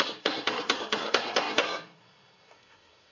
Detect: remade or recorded remade